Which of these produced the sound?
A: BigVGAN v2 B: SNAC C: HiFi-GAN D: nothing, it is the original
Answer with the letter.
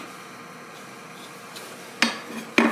D